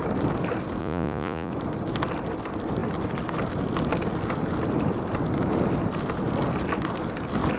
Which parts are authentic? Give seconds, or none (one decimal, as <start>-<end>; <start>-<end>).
0.0-0.8; 1.5-7.6

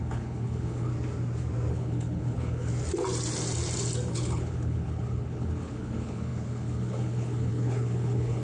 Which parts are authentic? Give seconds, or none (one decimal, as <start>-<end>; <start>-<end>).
0.9-1.7; 2.7-4.1

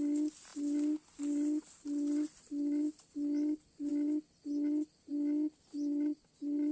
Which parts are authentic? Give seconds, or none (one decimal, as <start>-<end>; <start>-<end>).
0.0-6.7

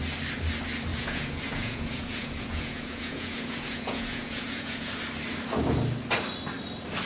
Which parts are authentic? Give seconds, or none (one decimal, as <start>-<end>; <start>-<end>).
0.0-0.9; 4.9-7.1